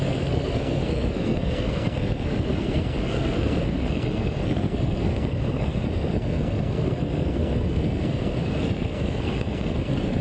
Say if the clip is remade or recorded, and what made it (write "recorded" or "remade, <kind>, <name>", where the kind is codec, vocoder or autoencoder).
remade, codec, SNAC